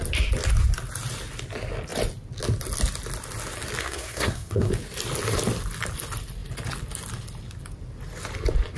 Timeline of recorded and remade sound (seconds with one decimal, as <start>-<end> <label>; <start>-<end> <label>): 0.0-3.8 recorded; 3.8-4.7 remade; 4.7-8.8 recorded